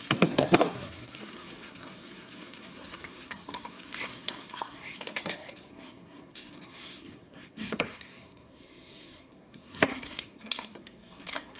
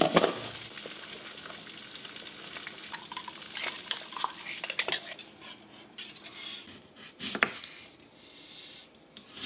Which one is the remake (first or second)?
first